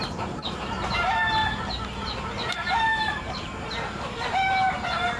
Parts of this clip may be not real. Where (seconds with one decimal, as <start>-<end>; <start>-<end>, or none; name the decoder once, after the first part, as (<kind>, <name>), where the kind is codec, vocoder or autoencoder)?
0.0-1.4 (vocoder, BigVGAN v2); 2.5-5.2